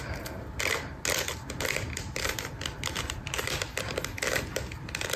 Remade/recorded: recorded